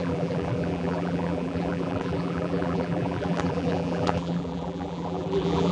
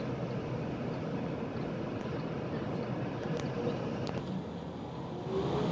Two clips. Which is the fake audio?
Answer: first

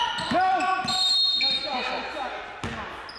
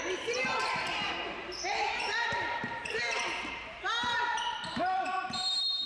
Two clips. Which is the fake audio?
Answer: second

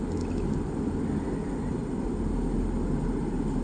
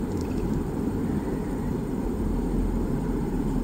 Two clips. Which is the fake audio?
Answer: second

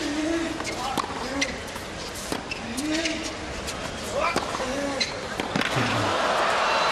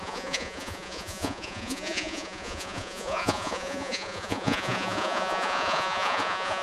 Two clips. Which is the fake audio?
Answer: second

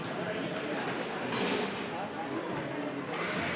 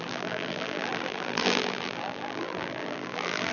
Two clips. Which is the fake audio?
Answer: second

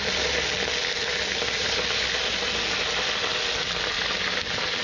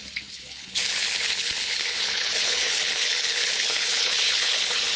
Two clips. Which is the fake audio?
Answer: second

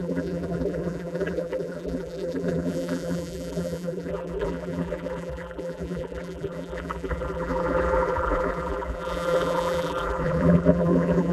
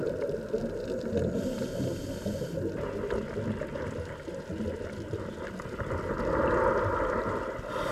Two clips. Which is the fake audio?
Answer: first